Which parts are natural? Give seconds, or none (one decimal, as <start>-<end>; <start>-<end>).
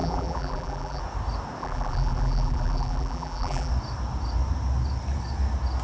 1.0-1.6; 3.7-5.8